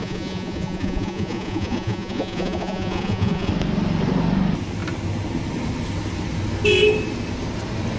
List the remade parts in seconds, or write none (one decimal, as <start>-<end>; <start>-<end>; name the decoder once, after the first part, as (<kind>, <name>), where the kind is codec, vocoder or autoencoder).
0.0-3.5 (vocoder, Vocos)